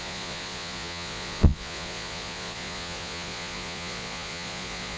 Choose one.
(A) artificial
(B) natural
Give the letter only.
A